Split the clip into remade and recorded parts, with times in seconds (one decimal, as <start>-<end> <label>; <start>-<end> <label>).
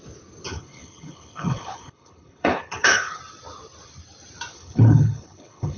0.0-0.5 recorded; 0.5-3.2 remade; 3.2-4.5 recorded; 4.5-5.8 remade